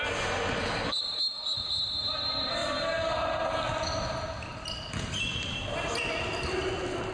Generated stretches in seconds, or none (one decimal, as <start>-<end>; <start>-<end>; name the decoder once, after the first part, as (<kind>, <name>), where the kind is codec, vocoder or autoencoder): none